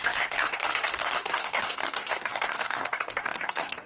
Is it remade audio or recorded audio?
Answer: remade